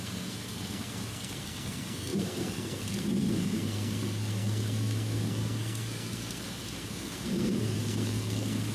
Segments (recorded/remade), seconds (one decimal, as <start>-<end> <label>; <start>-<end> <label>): 0.0-8.7 remade